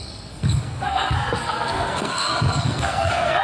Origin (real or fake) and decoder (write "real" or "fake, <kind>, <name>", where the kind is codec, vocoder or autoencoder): fake, codec, SNAC